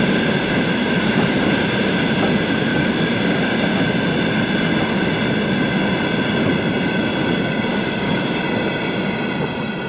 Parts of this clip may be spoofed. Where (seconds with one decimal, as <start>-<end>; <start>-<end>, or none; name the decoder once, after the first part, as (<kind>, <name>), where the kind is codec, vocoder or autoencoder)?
2.7-3.4 (codec, DAC); 7.7-8.4